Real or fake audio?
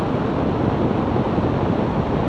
real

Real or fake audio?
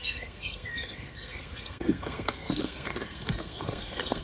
fake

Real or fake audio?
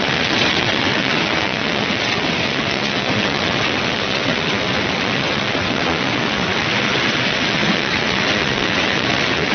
fake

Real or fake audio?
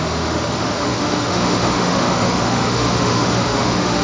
fake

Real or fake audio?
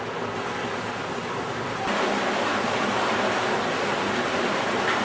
real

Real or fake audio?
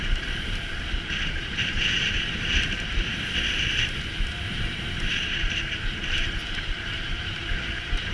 fake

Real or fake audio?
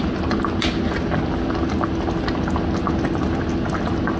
real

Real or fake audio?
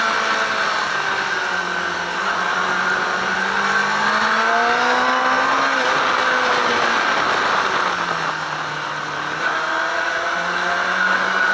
real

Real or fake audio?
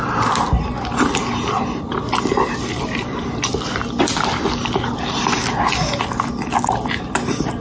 real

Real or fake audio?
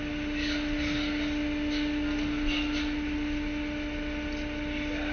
real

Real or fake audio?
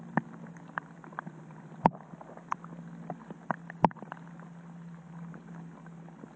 real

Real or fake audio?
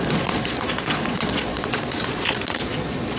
fake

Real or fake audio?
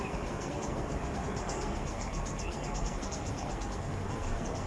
fake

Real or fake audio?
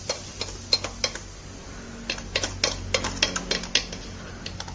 real